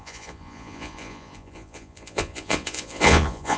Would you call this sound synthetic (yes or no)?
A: yes